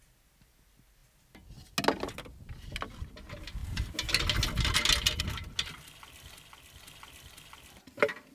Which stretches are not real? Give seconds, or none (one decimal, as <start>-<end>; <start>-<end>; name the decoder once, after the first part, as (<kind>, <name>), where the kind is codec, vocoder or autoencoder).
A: none